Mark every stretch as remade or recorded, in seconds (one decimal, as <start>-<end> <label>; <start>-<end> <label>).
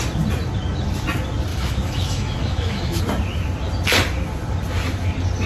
0.0-1.5 recorded; 1.5-3.0 remade; 3.0-5.5 recorded